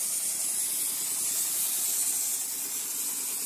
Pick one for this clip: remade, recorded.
recorded